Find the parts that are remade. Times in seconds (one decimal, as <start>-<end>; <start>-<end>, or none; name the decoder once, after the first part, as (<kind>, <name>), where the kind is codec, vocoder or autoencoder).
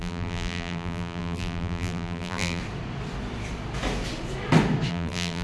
0.0-2.6 (vocoder, BigVGAN v2); 4.9-5.4